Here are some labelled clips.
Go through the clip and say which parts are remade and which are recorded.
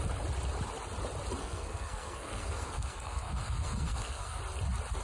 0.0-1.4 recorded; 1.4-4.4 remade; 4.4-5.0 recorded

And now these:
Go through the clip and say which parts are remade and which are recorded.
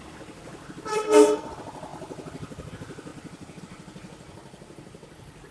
0.0-0.9 recorded; 0.9-1.5 remade; 1.5-5.5 recorded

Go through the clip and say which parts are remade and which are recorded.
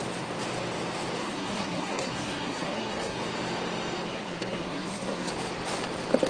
0.0-1.2 recorded; 1.2-3.2 remade; 3.2-4.1 recorded; 4.1-5.3 remade; 5.3-6.3 recorded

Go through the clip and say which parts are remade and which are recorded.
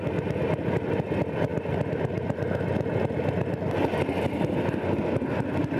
0.0-5.8 recorded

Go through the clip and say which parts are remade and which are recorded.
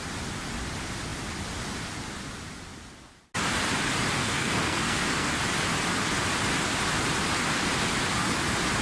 0.0-4.2 recorded; 4.2-5.3 remade; 5.3-8.8 recorded